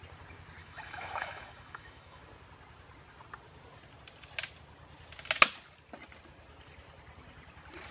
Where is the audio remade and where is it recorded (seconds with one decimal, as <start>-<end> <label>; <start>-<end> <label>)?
0.0-0.6 recorded; 0.6-2.2 remade; 2.2-7.9 recorded